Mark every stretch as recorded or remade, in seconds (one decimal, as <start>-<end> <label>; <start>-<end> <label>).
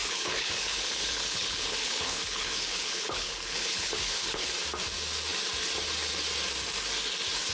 0.0-4.5 remade; 4.5-7.5 recorded